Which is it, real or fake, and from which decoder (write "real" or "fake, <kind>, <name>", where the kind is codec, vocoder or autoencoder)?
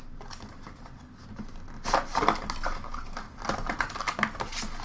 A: real